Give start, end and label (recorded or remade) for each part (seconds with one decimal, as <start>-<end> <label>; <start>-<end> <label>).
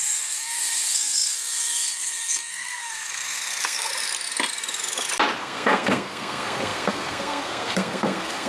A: 0.0-3.9 remade; 3.9-5.4 recorded; 5.4-8.5 remade